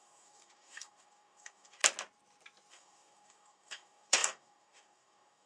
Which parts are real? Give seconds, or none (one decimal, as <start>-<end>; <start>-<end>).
1.8-2.7